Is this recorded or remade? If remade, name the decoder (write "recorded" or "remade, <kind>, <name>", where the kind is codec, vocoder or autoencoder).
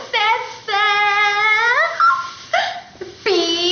recorded